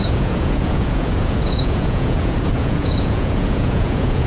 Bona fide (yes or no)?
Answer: no